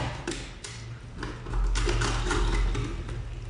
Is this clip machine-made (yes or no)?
no